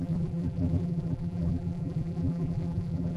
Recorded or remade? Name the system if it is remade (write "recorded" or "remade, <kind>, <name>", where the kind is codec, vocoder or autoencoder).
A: remade, vocoder, BigVGAN v2